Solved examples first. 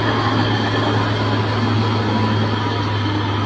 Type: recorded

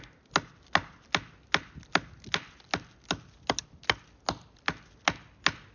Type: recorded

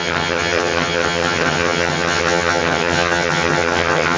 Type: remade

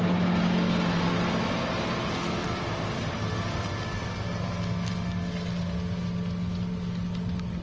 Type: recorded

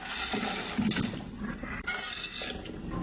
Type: recorded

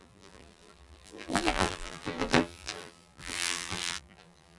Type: remade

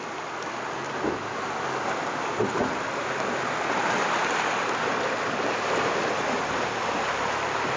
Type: recorded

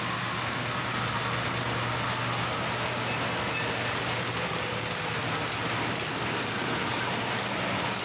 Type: recorded